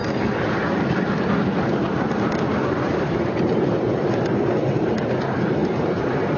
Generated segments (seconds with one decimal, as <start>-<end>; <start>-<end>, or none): 2.6-3.9; 5.6-6.4